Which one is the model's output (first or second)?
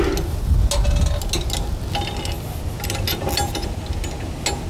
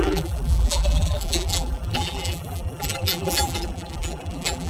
second